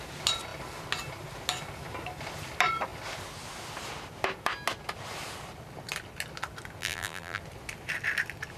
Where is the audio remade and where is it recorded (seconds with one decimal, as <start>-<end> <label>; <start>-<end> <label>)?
0.0-6.8 recorded; 6.8-7.4 remade; 7.4-8.6 recorded